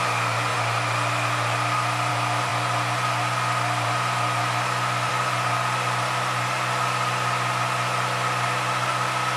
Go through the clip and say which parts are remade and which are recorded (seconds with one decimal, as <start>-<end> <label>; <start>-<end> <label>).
0.0-9.4 recorded